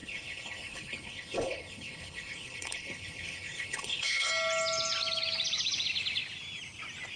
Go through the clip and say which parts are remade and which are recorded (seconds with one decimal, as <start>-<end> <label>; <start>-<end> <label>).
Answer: 0.0-4.3 remade; 4.3-7.2 recorded